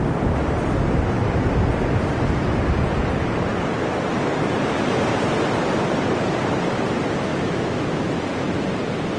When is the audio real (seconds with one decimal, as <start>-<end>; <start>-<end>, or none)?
0.0-7.3; 8.0-9.2